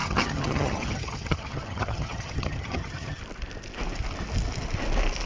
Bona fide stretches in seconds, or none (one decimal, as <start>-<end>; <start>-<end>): 3.2-5.3